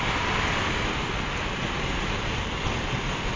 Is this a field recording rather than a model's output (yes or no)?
yes